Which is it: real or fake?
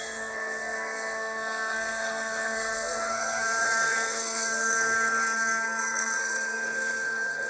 fake